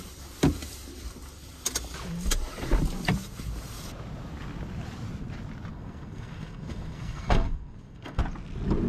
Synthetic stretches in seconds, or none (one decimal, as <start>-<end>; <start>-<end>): 5.7-8.2